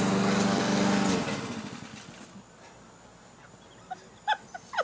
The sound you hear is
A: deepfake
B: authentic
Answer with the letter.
B